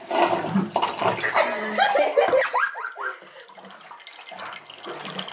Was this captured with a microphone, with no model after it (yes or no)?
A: yes